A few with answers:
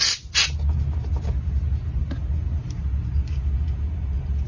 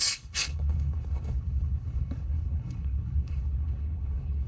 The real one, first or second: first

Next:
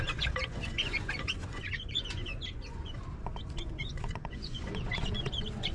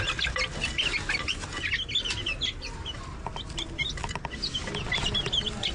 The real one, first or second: second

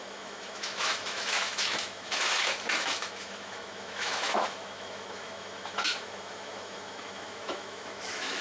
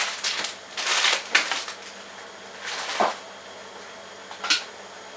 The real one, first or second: second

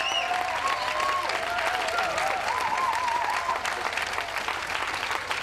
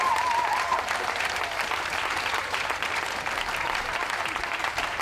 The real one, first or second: first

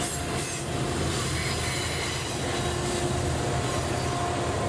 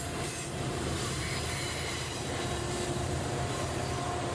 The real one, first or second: first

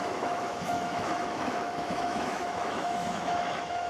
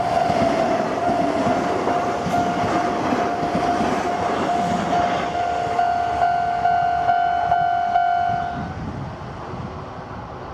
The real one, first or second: second